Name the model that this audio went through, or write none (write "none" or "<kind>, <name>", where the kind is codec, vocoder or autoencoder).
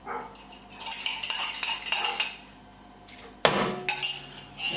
none